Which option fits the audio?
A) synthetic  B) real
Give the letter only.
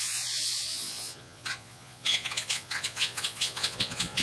A